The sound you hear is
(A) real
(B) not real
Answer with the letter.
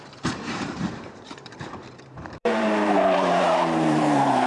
B